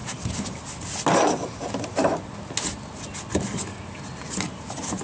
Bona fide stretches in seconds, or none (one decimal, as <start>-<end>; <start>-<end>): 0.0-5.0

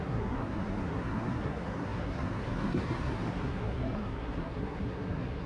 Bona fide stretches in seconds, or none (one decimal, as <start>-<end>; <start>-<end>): none

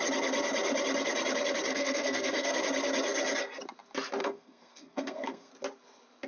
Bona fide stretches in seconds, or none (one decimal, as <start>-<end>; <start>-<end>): 0.0-1.7; 2.6-4.2; 5.5-6.3